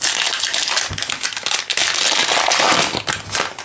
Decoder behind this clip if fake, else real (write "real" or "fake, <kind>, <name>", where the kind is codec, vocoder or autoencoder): real